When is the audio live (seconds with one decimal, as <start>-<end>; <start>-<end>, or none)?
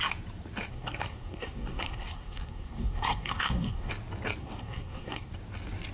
0.0-0.7; 3.9-4.4; 5.3-5.9